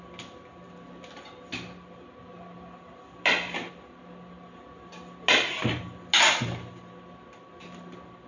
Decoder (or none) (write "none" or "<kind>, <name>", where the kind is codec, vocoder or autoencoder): none